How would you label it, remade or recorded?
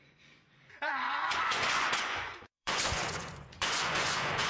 remade